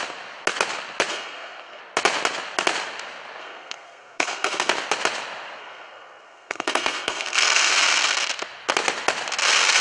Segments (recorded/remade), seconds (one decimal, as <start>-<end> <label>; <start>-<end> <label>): 0.0-1.1 recorded; 1.1-1.8 remade; 1.8-3.4 recorded; 3.4-4.7 remade; 4.7-5.6 recorded; 5.6-7.7 remade; 7.7-9.8 recorded